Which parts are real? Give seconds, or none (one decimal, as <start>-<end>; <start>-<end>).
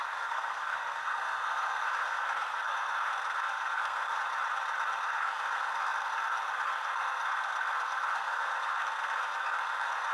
4.2-5.0